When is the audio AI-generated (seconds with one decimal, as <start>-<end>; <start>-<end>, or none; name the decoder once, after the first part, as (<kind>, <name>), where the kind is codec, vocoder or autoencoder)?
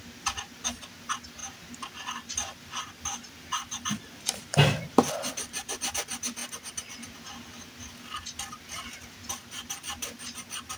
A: none